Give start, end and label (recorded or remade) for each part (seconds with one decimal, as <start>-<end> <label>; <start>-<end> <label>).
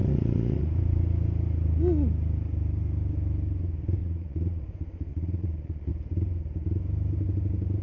0.0-0.7 remade; 0.7-4.0 recorded; 4.0-4.6 remade; 4.6-5.1 recorded; 5.1-5.9 remade; 5.9-7.8 recorded